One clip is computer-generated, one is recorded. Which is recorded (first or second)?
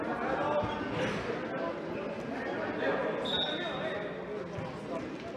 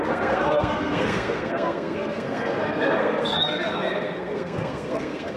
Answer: first